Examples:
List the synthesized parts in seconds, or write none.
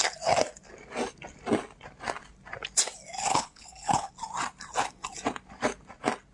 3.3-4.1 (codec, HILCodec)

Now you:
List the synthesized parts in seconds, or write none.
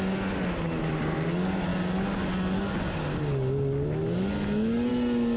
none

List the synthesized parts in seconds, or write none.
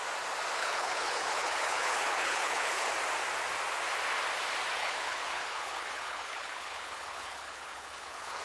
0.6-2.9 (codec, HILCodec); 4.8-8.4